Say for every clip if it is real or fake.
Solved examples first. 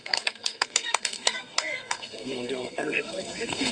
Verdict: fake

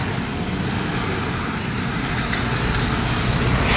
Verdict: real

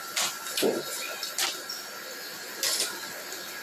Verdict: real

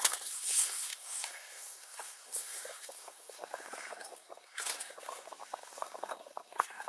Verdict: fake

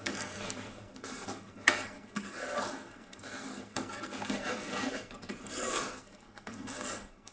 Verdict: fake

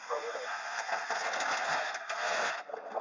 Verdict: fake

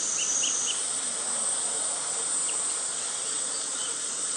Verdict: real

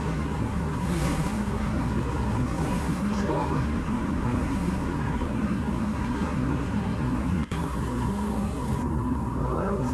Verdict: fake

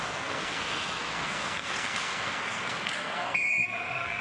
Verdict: fake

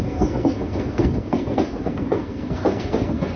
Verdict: fake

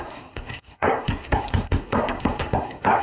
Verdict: fake